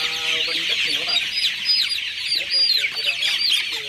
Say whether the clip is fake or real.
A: real